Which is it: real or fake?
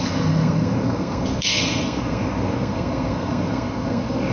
fake